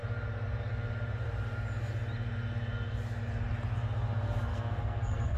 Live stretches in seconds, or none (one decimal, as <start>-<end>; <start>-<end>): 0.0-4.5